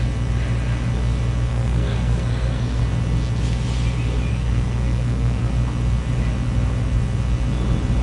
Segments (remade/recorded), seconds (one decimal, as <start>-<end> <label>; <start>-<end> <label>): 0.0-1.5 recorded; 1.5-2.8 remade; 2.8-4.3 recorded; 4.3-5.5 remade; 5.5-8.0 recorded